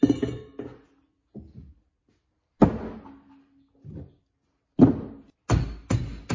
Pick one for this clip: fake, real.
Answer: real